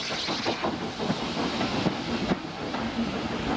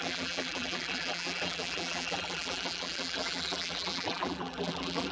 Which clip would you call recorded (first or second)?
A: first